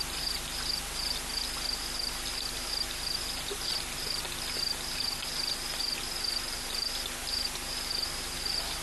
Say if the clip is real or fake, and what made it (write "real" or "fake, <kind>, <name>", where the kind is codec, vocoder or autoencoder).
real